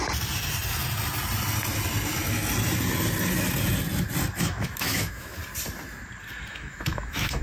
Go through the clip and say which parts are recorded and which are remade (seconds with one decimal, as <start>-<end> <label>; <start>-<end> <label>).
0.0-4.4 recorded; 4.4-5.4 remade; 5.4-6.5 recorded; 6.5-7.4 remade